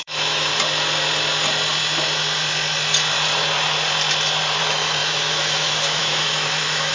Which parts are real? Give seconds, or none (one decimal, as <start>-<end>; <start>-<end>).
0.5-4.6